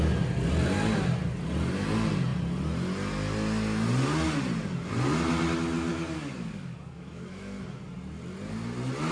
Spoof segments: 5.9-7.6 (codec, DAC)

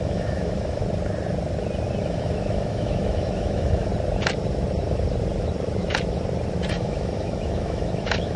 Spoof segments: 0.0-0.8 (autoencoder, DAC-VAE); 2.0-3.9; 6.7-8.4